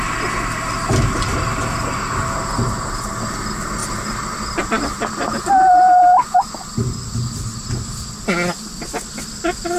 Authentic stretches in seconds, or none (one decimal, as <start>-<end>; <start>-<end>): 0.0-9.8